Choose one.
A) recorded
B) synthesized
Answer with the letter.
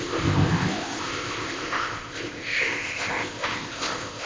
B